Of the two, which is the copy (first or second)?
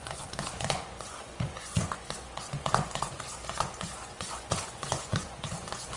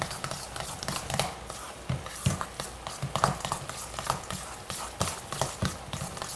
first